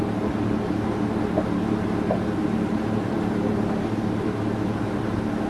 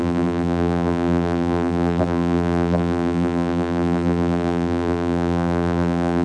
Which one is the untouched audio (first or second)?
first